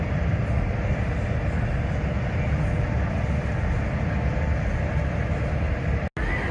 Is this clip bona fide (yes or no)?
yes